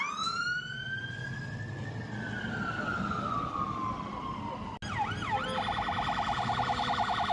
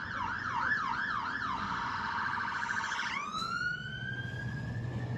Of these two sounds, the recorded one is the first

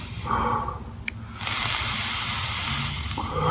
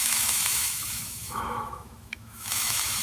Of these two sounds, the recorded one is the first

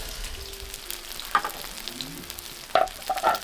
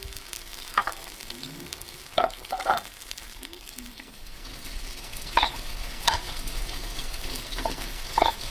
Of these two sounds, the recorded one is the first